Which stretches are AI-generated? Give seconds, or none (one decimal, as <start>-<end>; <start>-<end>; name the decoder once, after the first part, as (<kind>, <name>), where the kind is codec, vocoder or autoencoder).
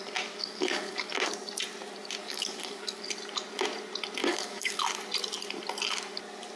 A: 0.4-1.1 (codec, DAC); 2.2-3.0; 4.2-4.8